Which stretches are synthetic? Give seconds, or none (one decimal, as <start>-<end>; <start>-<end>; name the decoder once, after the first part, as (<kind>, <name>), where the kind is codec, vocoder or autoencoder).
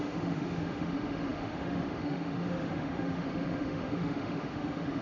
0.0-5.0 (autoencoder, DAC-VAE)